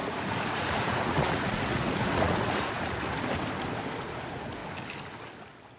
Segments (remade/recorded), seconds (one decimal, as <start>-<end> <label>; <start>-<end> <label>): 0.0-3.1 remade; 3.1-4.0 recorded; 4.0-4.6 remade; 4.6-5.8 recorded